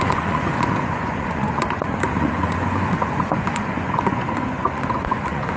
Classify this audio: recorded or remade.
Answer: remade